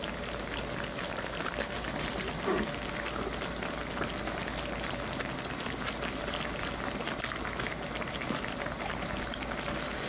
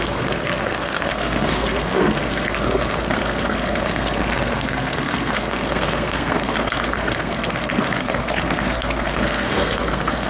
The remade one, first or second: second